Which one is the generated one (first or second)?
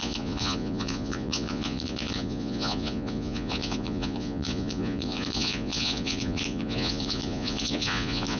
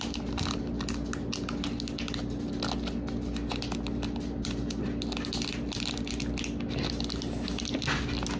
first